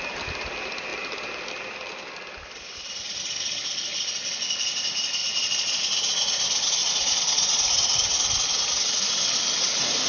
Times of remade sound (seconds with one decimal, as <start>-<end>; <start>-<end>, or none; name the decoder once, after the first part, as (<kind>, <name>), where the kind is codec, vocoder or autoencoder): 5.2-5.8 (vocoder, Vocos); 6.8-7.7